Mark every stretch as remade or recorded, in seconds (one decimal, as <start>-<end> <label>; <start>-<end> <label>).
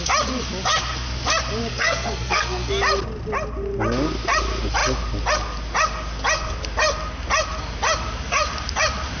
0.0-1.7 recorded; 1.7-2.7 remade; 2.7-9.2 recorded